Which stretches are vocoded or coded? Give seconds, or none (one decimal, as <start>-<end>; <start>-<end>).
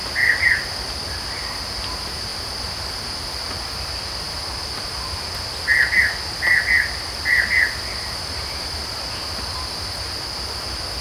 none